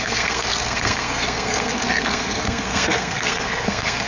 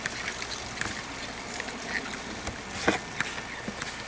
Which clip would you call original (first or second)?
second